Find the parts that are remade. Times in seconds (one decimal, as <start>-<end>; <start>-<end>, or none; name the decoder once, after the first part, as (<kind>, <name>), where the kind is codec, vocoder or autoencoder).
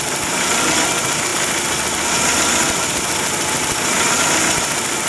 none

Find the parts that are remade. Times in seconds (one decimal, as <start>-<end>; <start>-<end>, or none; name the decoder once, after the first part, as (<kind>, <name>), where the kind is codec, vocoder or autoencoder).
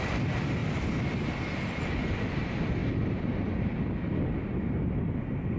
none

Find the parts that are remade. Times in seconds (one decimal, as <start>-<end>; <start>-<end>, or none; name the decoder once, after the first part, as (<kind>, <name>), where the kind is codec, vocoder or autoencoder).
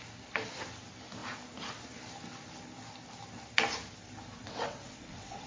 4.4-5.5 (vocoder, WaveNeXt)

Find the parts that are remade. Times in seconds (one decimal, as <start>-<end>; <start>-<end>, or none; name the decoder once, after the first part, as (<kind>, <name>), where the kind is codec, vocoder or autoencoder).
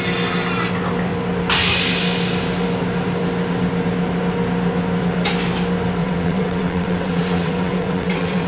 6.0-8.5 (vocoder, WaveNeXt)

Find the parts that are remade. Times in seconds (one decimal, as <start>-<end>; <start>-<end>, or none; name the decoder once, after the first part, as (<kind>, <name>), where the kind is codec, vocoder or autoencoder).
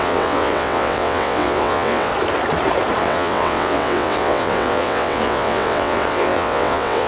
0.0-2.1 (vocoder, WaveNeXt); 3.0-7.1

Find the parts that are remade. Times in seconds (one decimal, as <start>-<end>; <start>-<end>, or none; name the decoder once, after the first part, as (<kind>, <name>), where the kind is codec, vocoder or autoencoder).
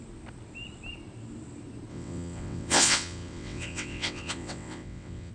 1.9-5.3 (vocoder, WaveNeXt)